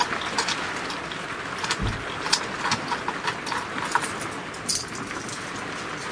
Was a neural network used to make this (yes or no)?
no